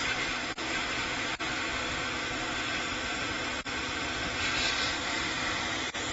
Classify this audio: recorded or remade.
recorded